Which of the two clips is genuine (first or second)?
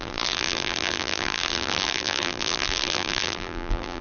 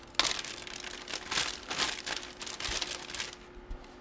second